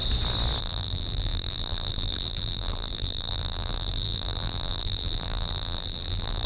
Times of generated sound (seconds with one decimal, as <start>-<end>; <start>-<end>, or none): 0.6-6.5